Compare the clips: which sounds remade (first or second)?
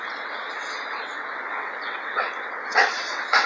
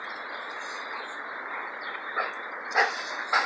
first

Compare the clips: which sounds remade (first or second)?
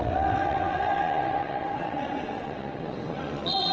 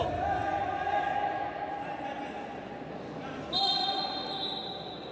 first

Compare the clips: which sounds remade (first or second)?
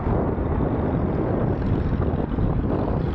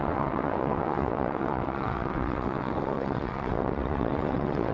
second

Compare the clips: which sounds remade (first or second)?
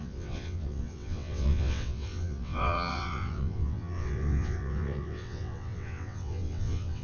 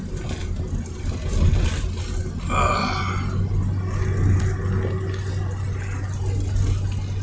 first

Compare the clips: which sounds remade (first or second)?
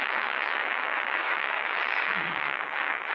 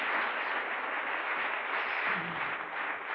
first